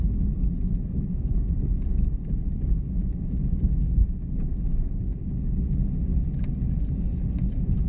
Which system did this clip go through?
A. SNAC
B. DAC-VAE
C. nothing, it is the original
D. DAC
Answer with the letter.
C